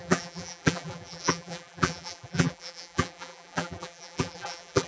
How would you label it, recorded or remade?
remade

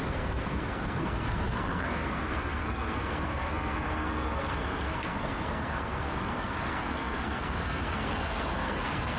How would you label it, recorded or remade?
remade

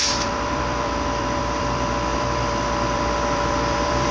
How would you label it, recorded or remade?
remade